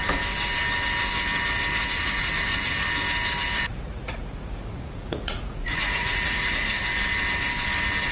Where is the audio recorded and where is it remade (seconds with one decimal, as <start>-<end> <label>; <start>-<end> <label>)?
0.0-3.7 recorded; 3.7-6.8 remade; 6.8-8.1 recorded